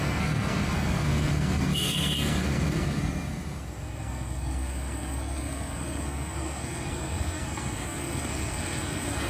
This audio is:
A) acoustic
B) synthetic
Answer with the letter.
B